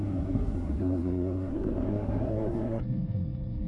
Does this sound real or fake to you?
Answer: fake